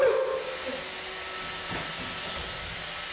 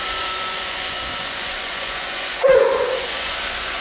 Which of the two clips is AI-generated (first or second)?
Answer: second